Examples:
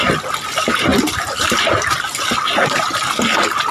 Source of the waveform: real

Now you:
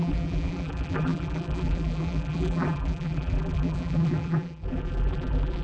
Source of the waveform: fake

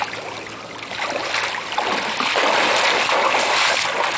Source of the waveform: real